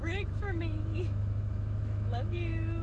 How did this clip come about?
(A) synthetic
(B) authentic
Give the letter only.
A